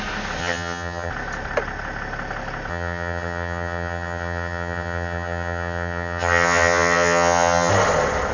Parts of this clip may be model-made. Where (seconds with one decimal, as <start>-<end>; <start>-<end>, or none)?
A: 0.4-1.1; 2.7-7.7